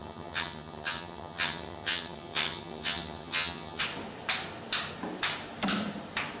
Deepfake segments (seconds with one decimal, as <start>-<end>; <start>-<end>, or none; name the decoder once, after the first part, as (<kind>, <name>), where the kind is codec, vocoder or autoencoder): 0.0-3.8 (vocoder, HiFi-GAN)